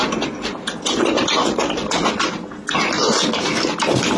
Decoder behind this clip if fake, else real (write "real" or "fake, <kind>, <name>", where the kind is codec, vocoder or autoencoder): real